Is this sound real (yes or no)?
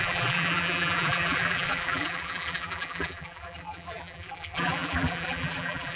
no